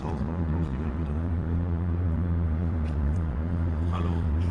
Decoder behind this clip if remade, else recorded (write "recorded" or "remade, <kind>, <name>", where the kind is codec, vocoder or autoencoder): remade, vocoder, Vocos